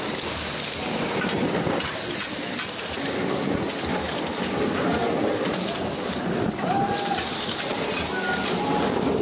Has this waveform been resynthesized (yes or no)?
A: no